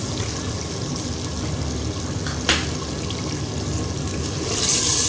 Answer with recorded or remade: recorded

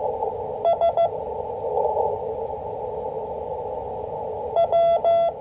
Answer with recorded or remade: recorded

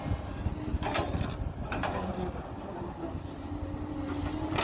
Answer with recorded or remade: recorded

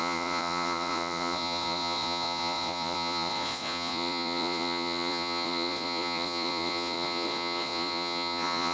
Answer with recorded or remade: remade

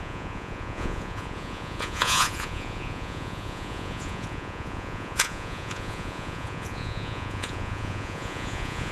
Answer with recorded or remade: remade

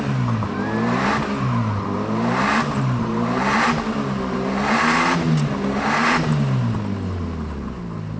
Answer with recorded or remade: recorded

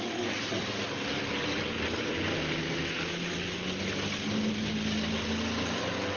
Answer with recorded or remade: recorded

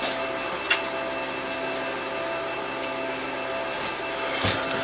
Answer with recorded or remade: recorded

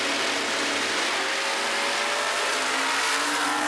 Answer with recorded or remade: recorded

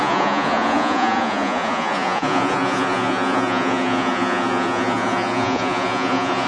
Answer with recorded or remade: remade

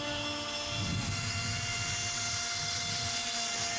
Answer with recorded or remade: recorded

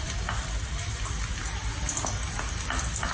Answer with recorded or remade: recorded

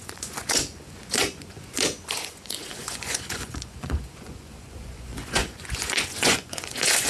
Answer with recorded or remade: remade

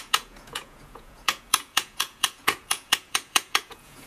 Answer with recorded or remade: remade